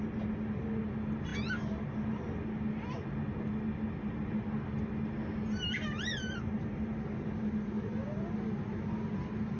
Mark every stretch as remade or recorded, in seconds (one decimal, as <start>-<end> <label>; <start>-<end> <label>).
0.0-9.6 recorded